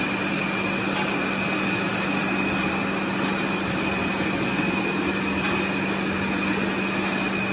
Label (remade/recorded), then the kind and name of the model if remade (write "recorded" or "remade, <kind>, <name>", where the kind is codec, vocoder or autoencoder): recorded